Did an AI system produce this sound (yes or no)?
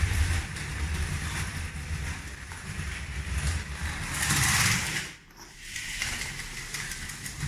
no